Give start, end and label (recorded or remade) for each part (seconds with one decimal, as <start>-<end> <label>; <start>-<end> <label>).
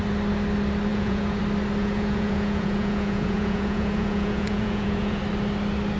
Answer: 0.0-0.9 recorded; 0.9-1.4 remade; 1.4-1.8 recorded; 1.8-5.2 remade; 5.2-6.0 recorded